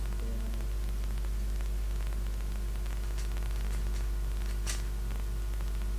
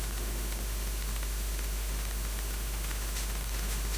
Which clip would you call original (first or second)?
first